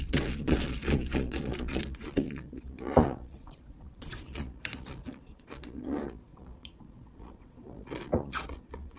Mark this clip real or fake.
fake